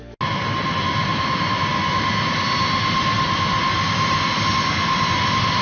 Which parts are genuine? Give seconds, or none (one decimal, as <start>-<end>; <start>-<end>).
0.0-5.6